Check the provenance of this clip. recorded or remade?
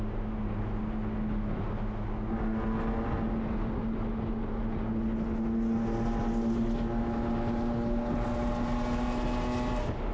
recorded